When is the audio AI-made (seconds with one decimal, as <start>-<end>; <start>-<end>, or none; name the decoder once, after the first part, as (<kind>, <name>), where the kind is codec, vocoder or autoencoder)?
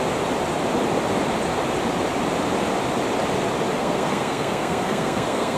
3.8-5.6 (codec, SNAC)